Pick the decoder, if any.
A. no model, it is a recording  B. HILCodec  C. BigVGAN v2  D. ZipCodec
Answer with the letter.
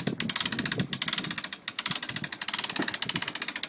A